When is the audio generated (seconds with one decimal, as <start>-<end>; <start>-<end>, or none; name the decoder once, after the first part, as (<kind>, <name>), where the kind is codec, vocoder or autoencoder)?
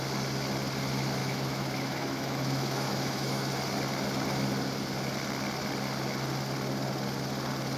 1.2-3.5 (autoencoder, DAC-VAE)